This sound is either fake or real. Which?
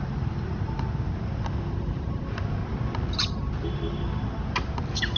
real